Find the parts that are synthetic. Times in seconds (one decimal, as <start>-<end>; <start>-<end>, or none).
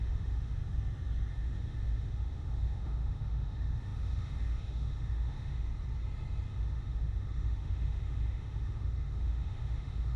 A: 0.0-0.6; 1.3-5.7; 6.5-10.2